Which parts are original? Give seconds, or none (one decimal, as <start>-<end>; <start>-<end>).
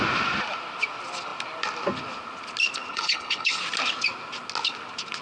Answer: 0.0-2.9; 3.6-5.2